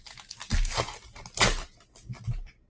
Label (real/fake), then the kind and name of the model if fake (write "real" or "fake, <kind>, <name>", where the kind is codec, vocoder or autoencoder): real